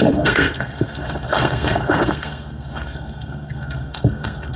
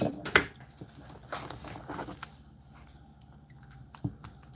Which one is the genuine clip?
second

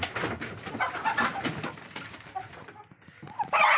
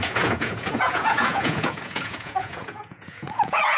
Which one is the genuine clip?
first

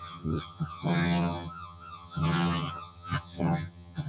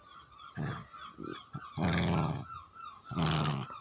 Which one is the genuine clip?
second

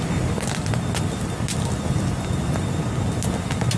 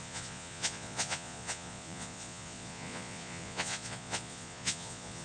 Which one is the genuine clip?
first